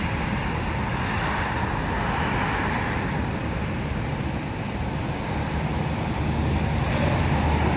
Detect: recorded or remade recorded